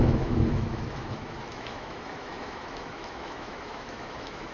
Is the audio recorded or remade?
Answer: remade